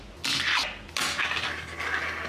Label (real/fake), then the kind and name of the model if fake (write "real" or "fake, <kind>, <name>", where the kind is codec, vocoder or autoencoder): real